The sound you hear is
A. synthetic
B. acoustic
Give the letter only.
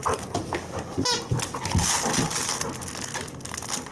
B